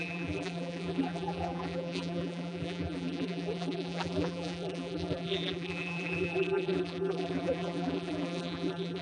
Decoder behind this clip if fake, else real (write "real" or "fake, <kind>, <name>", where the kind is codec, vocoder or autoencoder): fake, vocoder, BigVGAN v2